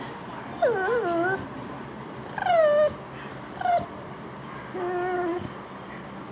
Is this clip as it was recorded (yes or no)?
yes